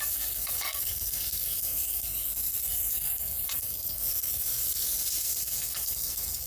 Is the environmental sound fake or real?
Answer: fake